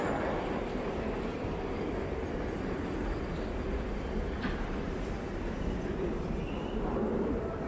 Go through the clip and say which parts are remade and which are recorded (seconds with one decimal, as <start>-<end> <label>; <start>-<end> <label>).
0.0-2.8 recorded; 2.8-7.7 remade